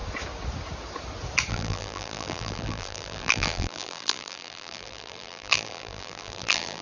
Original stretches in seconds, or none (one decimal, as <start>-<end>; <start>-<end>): 0.0-1.5